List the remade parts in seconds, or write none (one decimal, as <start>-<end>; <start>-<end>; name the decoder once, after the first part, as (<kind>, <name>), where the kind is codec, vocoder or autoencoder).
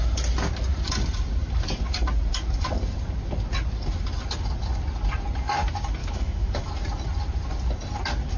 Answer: 6.0-6.7 (autoencoder, DAC-VAE)